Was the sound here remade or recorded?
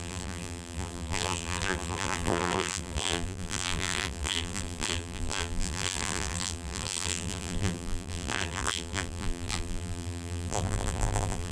remade